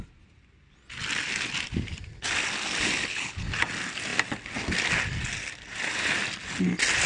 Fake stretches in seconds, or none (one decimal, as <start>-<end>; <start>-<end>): 3.0-3.5